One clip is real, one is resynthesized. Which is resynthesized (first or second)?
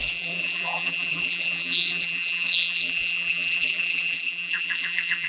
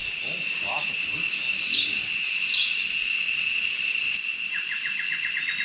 first